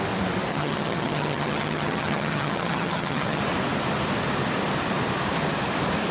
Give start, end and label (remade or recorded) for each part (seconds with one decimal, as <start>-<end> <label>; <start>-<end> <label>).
0.0-0.5 recorded; 0.5-3.4 remade; 3.4-6.1 recorded